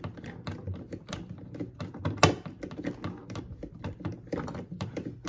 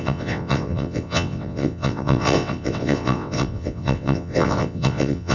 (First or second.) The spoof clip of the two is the second